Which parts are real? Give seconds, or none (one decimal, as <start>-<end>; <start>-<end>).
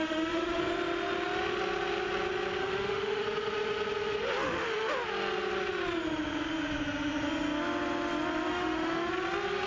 0.6-2.6; 3.2-4.4; 4.9-8.5; 9.1-9.7